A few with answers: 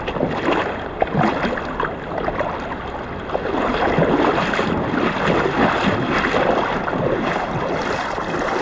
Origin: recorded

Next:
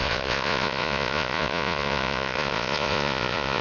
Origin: remade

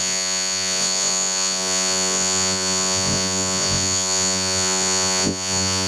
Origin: remade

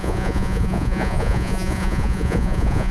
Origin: remade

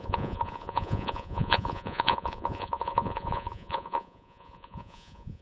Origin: remade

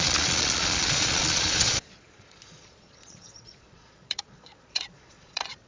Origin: remade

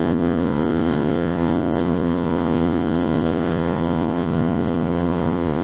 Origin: remade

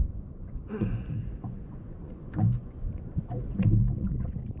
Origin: remade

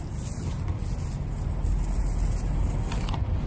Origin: recorded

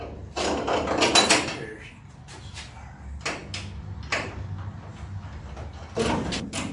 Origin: recorded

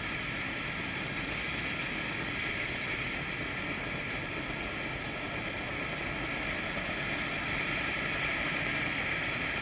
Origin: recorded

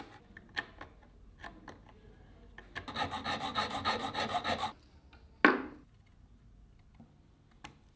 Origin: recorded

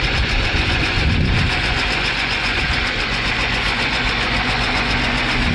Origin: remade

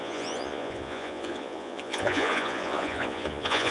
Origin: remade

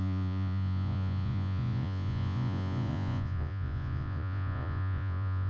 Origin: remade